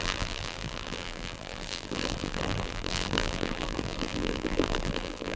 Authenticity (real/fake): fake